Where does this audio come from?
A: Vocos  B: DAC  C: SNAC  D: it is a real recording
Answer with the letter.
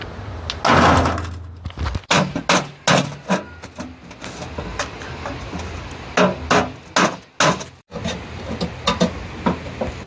D